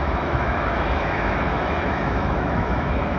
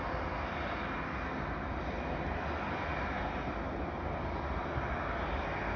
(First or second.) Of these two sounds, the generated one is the first